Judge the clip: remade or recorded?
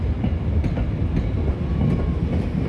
recorded